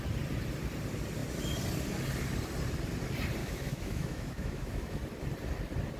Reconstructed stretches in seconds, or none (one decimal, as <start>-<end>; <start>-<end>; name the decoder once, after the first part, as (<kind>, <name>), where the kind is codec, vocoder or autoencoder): 3.4-5.0 (autoencoder, DAC-VAE)

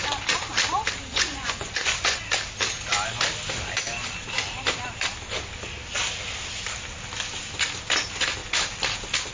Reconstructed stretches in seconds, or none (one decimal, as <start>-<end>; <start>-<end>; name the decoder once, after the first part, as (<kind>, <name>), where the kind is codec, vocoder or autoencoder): 1.1-2.2 (vocoder, Vocos)

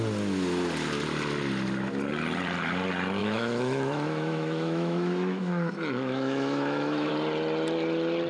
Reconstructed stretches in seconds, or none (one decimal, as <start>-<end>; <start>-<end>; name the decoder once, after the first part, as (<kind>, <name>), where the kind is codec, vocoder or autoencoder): 3.2-7.1 (autoencoder, DAC-VAE)

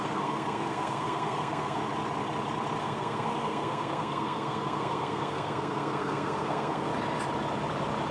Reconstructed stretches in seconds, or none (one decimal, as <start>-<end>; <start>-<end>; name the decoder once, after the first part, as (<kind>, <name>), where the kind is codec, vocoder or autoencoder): 0.0-1.8 (codec, SNAC); 2.8-6.9

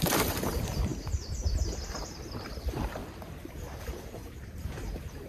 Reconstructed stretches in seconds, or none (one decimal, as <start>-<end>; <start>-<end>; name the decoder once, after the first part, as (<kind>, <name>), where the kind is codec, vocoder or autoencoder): 0.0-0.9 (vocoder, BigVGAN v2); 2.0-3.0; 3.5-5.3